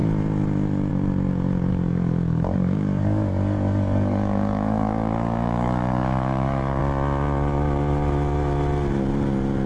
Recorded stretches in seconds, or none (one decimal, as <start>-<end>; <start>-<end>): 0.0-1.7; 6.8-9.7